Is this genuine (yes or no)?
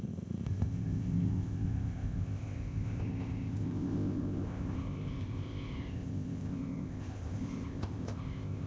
no